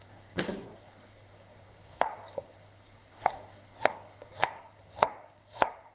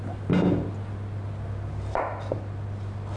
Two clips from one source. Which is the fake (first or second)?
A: first